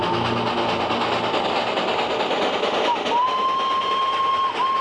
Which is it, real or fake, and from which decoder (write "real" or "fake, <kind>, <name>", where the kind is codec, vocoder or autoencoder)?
real